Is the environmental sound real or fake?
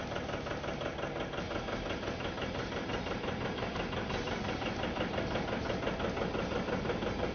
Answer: real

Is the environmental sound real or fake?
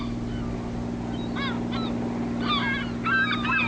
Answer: real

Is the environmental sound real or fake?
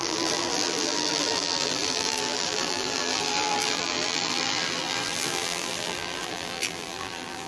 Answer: fake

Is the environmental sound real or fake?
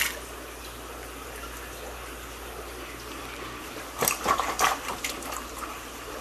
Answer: real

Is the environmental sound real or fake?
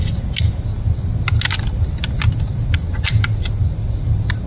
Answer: real